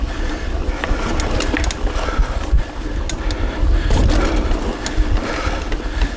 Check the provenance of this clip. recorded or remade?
recorded